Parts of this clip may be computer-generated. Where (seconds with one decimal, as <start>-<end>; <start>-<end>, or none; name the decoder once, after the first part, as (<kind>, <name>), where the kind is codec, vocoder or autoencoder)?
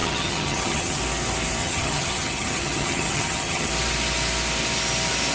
0.0-1.0 (vocoder, HiFi-GAN); 1.6-3.7